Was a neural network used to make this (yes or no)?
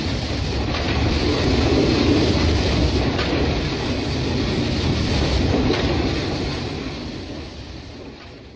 no